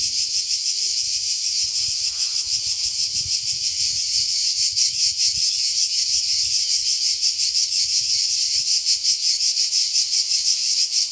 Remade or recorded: remade